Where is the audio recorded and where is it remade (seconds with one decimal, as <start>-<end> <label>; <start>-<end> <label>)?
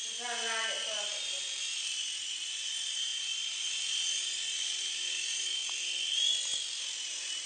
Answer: 0.0-1.4 recorded; 1.4-5.6 remade; 5.6-7.1 recorded; 7.1-7.5 remade